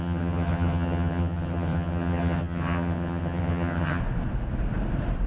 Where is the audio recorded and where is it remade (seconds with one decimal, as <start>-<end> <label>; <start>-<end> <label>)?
0.0-4.0 remade; 4.0-5.3 recorded

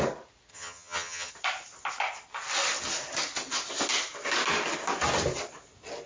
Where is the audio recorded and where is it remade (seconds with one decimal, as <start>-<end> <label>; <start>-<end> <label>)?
0.0-0.5 recorded; 0.5-1.3 remade; 1.3-6.1 recorded

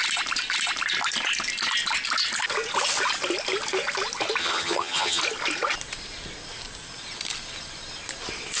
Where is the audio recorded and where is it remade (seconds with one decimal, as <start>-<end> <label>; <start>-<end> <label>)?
0.0-4.4 recorded; 4.4-5.2 remade; 5.2-8.6 recorded

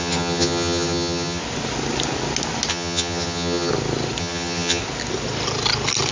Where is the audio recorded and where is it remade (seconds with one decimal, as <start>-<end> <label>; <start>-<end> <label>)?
0.0-1.4 remade; 1.4-2.7 recorded; 2.7-3.7 remade; 3.7-4.2 recorded; 4.2-4.8 remade; 4.8-6.1 recorded

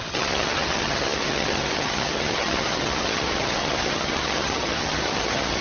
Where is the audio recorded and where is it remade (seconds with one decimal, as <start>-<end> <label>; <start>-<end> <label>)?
0.0-5.6 remade

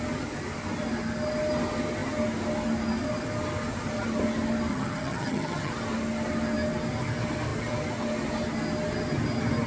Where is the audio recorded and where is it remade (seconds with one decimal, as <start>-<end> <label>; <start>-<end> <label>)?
0.0-4.7 recorded; 4.7-5.7 remade; 5.7-9.7 recorded

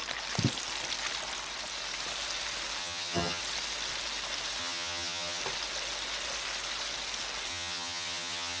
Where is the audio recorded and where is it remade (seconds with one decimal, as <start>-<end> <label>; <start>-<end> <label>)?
0.0-2.8 recorded; 2.8-3.4 remade; 3.4-4.6 recorded; 4.6-5.4 remade; 5.4-7.5 recorded; 7.5-8.6 remade

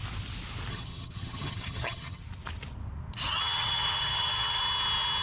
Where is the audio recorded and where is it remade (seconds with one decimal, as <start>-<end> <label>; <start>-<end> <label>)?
0.0-0.7 recorded; 0.7-2.2 remade; 2.2-3.3 recorded; 3.3-4.6 remade; 4.6-5.2 recorded